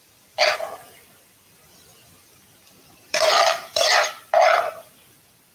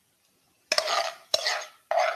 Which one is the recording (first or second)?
second